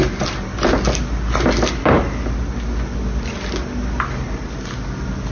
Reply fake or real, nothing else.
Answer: real